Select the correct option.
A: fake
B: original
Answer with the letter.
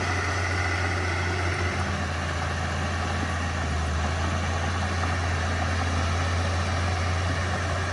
B